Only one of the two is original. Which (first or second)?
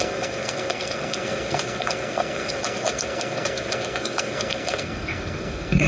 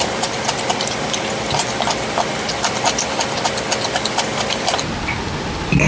second